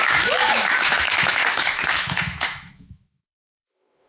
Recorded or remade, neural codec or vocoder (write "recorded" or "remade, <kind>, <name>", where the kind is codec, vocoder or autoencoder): remade, autoencoder, DAC-VAE